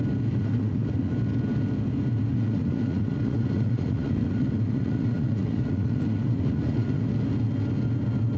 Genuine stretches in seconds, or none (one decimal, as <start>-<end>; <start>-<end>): 0.0-0.4; 1.1-2.3; 7.0-8.4